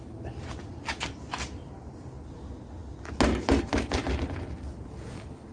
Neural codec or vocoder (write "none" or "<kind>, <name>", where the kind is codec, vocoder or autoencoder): none